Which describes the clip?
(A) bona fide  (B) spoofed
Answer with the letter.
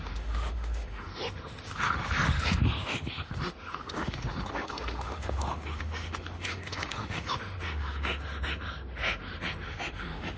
B